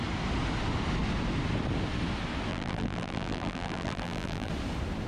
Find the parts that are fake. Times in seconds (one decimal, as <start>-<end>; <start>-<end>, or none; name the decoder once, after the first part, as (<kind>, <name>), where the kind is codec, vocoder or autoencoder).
2.5-4.5 (vocoder, BigVGAN v2)